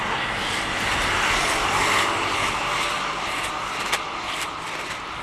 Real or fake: real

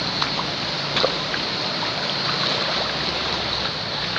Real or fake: real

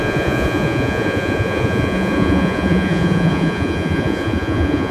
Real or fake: fake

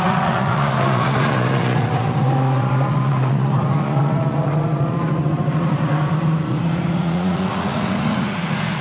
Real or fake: fake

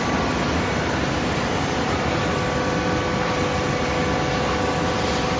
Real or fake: real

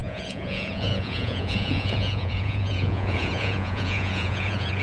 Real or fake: fake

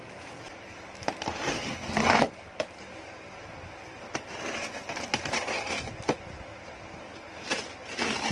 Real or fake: real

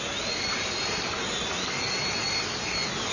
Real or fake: real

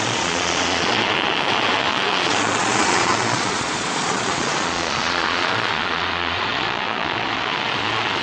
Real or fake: fake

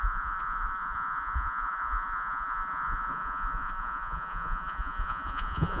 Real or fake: fake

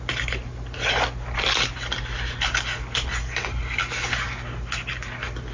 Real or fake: real